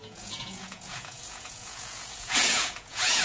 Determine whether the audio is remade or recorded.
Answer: remade